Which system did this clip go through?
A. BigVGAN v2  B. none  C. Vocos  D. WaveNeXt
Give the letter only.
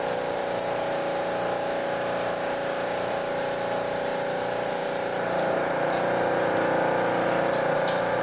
A